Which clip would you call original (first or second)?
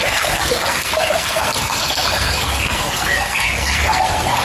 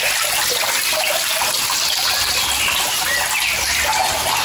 second